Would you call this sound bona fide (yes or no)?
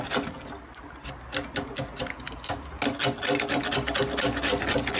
yes